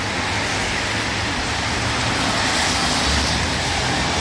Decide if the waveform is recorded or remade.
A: recorded